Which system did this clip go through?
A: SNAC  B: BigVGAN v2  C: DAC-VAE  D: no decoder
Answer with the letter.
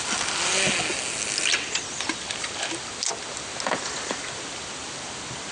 D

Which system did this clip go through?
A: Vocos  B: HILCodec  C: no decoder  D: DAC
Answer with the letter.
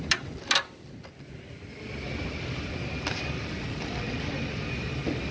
C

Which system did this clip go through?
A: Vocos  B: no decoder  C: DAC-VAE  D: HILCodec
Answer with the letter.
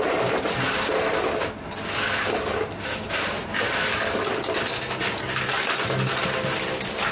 B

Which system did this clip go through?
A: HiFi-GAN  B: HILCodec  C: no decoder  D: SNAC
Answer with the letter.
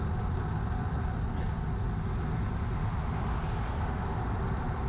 C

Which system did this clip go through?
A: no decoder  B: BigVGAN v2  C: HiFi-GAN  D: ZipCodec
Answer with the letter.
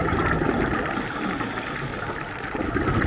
A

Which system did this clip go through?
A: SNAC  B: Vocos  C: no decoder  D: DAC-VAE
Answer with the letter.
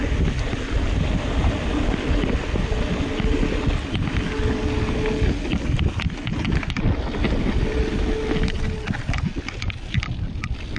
C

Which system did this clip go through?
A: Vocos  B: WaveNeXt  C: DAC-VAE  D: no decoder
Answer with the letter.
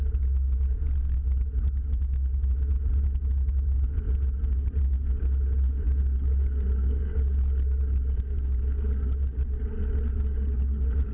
D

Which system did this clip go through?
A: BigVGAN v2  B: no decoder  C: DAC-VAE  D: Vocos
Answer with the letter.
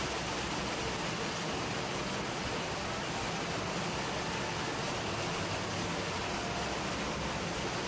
B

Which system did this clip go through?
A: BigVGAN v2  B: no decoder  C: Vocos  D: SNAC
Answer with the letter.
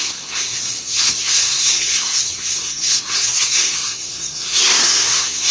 D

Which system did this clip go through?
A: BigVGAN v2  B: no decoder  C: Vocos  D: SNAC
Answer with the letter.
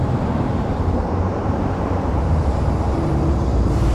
A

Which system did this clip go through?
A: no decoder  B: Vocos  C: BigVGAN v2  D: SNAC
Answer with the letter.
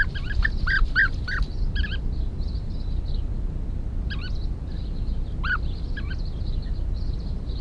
A